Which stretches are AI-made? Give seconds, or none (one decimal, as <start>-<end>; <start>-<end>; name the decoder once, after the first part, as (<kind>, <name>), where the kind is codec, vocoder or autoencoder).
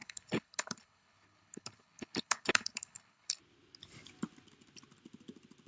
0.0-3.4 (codec, HILCodec)